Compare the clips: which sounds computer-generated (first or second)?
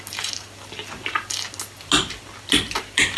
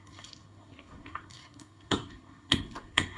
second